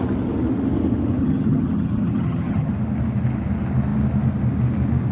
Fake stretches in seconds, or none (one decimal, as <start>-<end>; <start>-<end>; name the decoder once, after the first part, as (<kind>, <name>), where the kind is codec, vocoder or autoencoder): 1.2-2.7 (vocoder, HiFi-GAN)